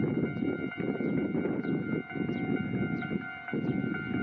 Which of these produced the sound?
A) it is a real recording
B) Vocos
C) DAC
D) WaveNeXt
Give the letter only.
A